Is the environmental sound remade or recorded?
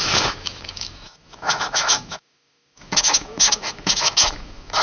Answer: remade